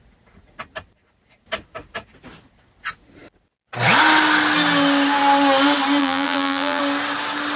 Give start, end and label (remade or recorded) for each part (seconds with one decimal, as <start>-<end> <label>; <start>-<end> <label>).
0.0-6.0 recorded; 6.0-6.8 remade; 6.8-7.6 recorded